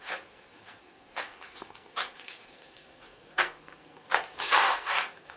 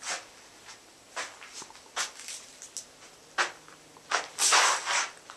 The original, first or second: second